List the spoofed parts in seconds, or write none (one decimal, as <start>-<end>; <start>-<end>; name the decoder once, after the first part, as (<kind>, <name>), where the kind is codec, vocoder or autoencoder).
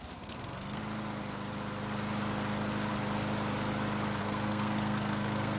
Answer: 0.0-0.8 (codec, SNAC); 4.2-5.6